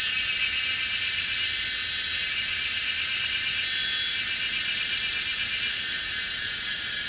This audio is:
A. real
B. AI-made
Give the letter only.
A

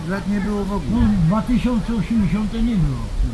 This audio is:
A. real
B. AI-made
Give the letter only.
A